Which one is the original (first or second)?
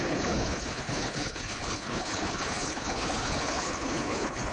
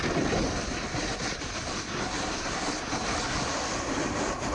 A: second